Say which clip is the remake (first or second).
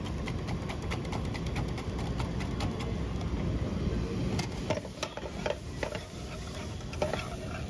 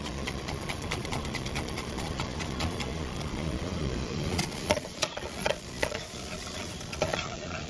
second